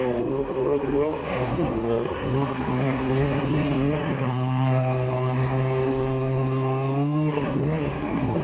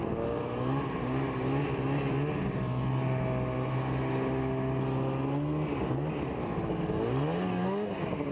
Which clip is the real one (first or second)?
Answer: second